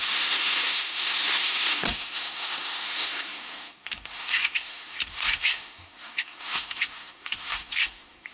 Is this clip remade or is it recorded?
remade